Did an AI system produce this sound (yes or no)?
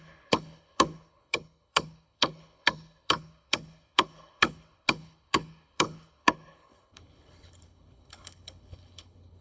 yes